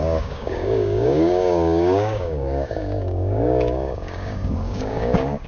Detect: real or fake fake